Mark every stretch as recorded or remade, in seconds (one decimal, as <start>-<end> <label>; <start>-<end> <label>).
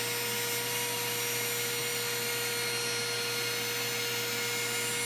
0.0-5.1 recorded